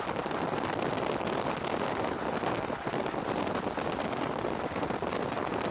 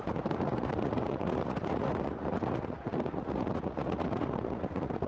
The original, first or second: first